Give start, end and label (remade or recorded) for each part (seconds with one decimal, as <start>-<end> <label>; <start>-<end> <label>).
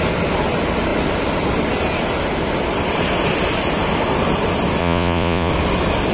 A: 0.0-4.8 recorded; 4.8-5.5 remade; 5.5-6.1 recorded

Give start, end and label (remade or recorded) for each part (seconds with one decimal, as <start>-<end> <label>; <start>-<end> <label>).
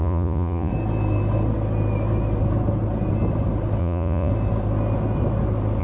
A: 0.0-0.7 remade; 0.7-3.8 recorded; 3.8-4.3 remade; 4.3-5.8 recorded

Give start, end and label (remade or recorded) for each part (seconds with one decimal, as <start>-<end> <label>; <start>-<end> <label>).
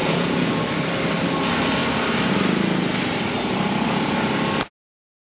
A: 0.0-0.6 remade; 0.6-5.4 recorded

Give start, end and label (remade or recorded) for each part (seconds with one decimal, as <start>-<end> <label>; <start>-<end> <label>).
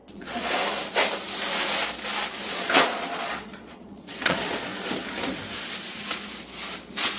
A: 0.0-0.6 remade; 0.6-2.5 recorded; 2.5-4.7 remade; 4.7-6.8 recorded; 6.8-7.2 remade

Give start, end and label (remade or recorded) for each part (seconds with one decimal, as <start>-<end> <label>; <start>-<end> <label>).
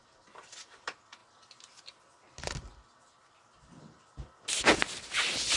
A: 0.0-5.6 recorded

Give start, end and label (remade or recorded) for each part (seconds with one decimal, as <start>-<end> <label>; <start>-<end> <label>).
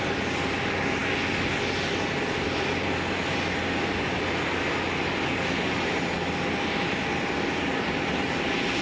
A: 0.0-8.8 recorded